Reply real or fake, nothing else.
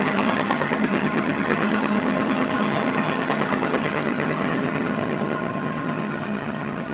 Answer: fake